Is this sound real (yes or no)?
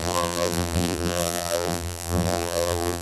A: no